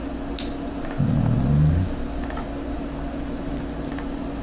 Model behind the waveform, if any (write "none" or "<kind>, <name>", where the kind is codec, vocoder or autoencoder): none